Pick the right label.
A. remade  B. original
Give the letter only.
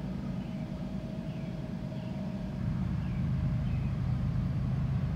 A